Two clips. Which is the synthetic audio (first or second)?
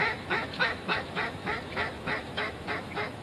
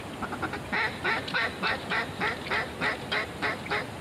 first